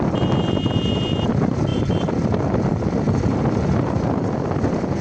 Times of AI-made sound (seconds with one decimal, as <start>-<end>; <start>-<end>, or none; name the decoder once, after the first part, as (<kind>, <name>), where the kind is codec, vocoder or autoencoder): none